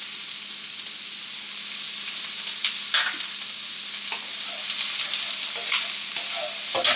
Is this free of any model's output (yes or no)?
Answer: yes